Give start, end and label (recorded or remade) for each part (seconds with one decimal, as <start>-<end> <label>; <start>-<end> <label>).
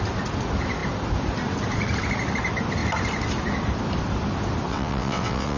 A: 0.0-4.7 recorded; 4.7-5.6 remade